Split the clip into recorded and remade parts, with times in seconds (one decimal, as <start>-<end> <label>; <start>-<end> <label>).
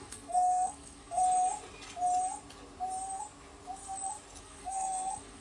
0.0-1.2 remade; 1.2-4.4 recorded; 4.4-5.4 remade